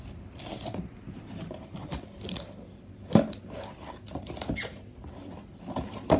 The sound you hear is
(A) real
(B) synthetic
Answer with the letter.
A